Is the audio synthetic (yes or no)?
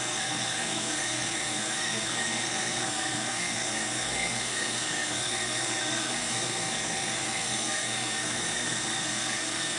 yes